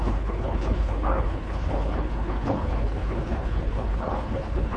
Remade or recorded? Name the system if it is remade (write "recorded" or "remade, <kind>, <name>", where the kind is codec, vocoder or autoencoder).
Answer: remade, codec, HILCodec